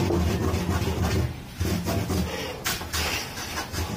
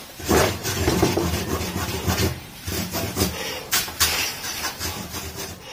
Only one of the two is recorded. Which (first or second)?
first